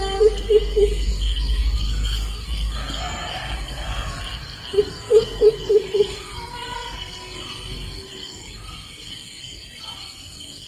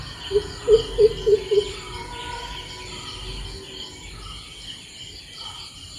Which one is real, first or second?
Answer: second